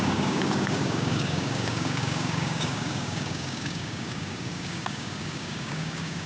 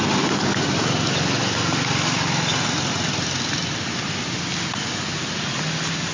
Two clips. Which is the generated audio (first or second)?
first